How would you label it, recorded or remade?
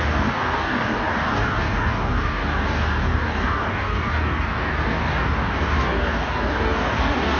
remade